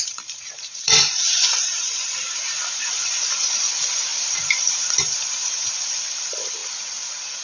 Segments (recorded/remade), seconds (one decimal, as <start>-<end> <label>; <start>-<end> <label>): 0.0-6.6 remade; 6.6-7.4 recorded